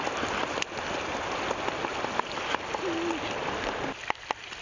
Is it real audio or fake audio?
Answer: real